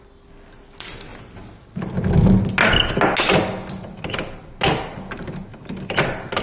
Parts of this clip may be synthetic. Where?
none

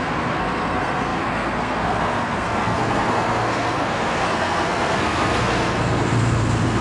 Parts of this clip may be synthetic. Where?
0.0-6.8 (codec, SNAC)

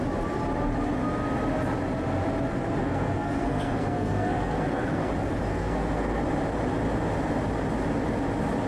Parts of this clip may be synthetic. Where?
2.8-5.1 (codec, SNAC); 5.5-6.2

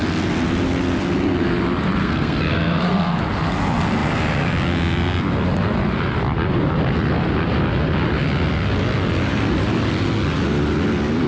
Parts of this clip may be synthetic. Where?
2.0-3.2 (codec, SNAC)

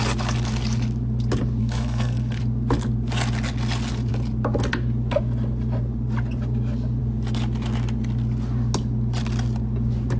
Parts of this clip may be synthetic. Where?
1.6-2.4 (codec, SNAC)

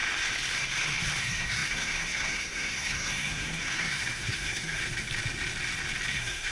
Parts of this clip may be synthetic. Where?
1.2-4.8 (codec, SNAC); 6.1-6.5